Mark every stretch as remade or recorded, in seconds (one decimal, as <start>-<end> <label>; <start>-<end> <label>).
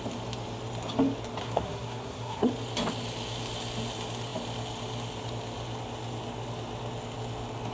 0.0-1.4 recorded; 1.4-2.5 remade; 2.5-7.7 recorded